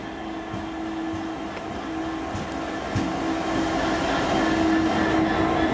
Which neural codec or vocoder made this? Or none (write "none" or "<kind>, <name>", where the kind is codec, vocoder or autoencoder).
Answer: none